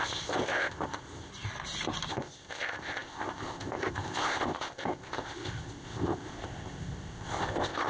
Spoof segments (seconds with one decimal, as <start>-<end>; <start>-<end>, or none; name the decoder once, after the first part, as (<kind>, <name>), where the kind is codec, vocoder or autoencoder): 0.0-1.3 (codec, ZipCodec); 2.1-7.9